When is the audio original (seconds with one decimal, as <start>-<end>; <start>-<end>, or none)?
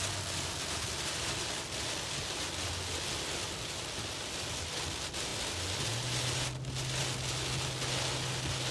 0.0-8.7